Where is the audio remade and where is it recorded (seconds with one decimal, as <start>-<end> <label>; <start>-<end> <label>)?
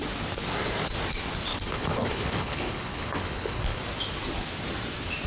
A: 0.0-1.5 recorded; 1.5-3.8 remade; 3.8-5.3 recorded